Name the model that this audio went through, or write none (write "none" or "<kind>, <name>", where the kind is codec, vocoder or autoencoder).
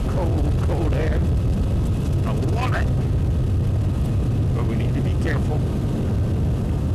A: none